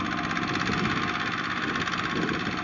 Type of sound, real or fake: real